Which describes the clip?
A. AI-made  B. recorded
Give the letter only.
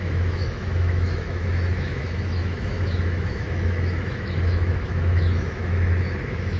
A